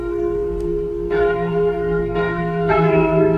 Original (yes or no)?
no